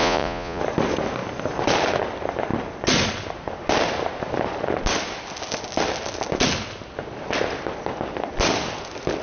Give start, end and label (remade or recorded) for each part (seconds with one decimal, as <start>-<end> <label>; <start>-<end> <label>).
0.0-0.6 remade; 0.6-9.2 recorded